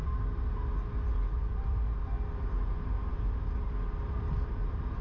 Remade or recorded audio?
recorded